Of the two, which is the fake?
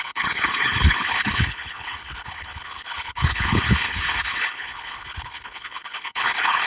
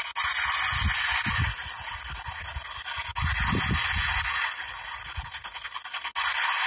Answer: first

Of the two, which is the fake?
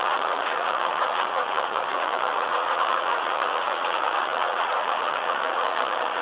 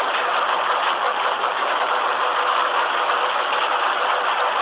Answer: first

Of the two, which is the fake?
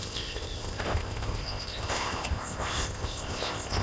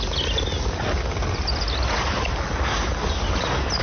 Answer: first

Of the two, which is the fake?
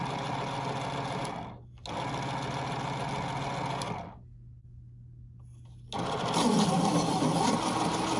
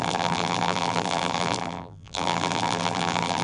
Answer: second